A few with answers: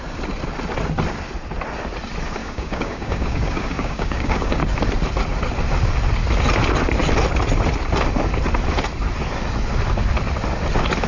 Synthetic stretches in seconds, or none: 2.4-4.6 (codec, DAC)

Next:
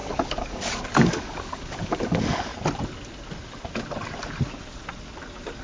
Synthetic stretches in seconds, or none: 0.0-2.5 (codec, DAC)

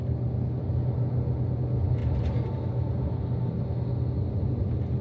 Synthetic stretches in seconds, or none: none

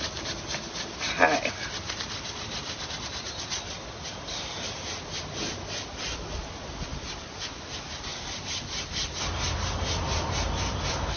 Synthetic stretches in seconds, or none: none

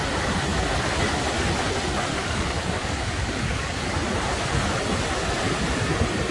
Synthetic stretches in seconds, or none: 2.1-3.9 (codec, DAC)